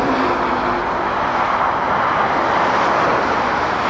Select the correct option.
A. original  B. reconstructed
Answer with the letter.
A